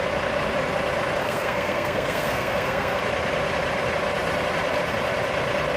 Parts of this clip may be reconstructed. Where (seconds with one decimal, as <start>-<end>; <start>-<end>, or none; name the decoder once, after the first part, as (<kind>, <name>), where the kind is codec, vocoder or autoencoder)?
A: 1.2-3.0 (codec, SNAC)